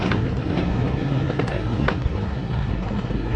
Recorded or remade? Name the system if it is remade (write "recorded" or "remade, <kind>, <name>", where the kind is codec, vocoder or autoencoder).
remade, codec, SNAC